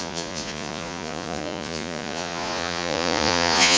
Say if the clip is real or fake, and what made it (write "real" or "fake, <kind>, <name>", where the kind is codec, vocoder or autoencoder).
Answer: fake, vocoder, Vocos